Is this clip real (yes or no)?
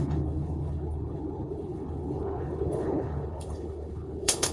no